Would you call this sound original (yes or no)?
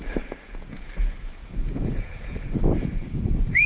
no